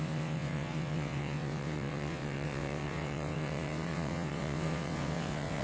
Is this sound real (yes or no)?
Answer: no